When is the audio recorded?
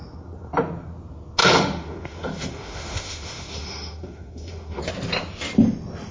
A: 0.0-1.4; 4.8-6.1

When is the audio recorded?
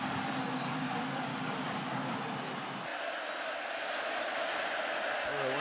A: 0.0-1.3; 2.2-5.6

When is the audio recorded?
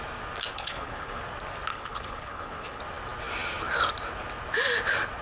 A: 0.0-0.5; 1.2-1.7; 2.8-5.2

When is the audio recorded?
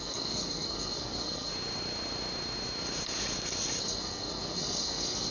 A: 1.5-3.8